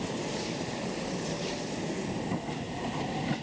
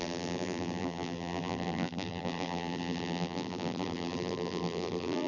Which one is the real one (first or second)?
first